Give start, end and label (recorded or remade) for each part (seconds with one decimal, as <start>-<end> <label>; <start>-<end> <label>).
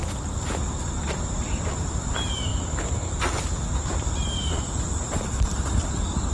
0.0-0.8 recorded; 0.8-2.5 remade; 2.5-3.4 recorded; 3.4-6.3 remade